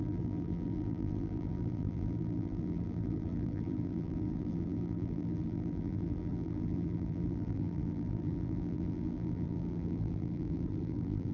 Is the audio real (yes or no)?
no